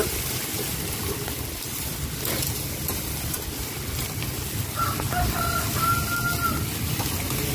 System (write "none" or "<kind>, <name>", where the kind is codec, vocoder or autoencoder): none